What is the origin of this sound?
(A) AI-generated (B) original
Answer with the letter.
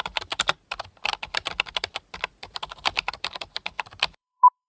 A